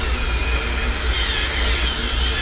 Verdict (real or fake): real